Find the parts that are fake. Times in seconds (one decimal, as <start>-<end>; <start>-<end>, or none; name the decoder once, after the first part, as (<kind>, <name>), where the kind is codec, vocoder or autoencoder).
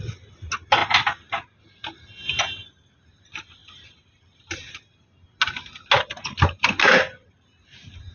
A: none